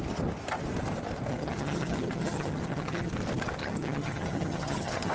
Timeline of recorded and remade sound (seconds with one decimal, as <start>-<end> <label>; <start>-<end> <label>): 0.0-1.3 recorded; 1.3-3.1 remade; 3.1-3.6 recorded; 3.6-5.1 remade